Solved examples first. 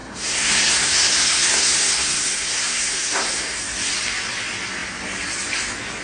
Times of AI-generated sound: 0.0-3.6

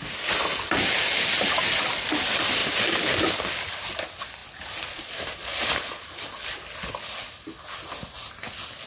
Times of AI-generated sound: none

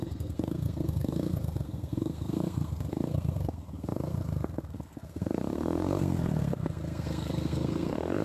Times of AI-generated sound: 0.0-8.2

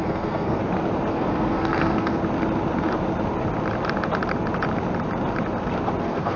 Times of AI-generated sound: 0.0-0.6; 1.1-2.2; 6.0-6.4

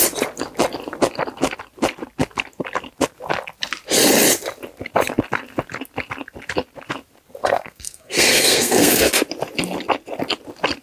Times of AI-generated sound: 7.4-9.1

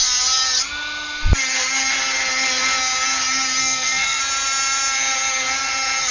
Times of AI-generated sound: 3.6-4.2

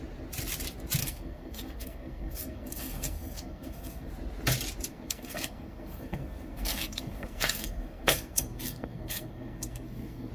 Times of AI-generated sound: 1.0-4.1; 4.9-10.3

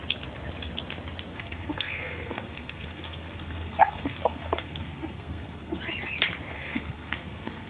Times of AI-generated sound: 1.3-5.8; 6.5-7.7